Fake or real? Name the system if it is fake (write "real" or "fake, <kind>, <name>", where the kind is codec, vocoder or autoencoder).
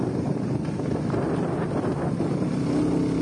real